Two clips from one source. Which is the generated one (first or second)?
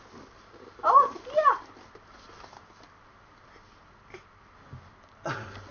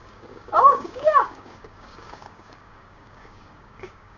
second